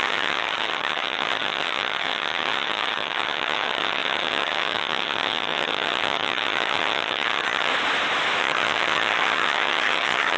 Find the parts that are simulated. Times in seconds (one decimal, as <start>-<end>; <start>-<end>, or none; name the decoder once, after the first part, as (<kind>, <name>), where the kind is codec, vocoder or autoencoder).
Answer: 0.0-7.7 (vocoder, HiFi-GAN); 8.4-10.4